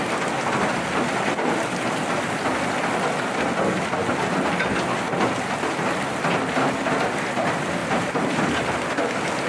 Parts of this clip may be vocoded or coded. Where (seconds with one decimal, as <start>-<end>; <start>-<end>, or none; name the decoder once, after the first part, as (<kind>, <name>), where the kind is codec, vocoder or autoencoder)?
7.8-8.7 (vocoder, BigVGAN v2)